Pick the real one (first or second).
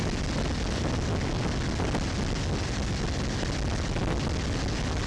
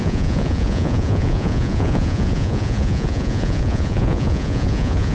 first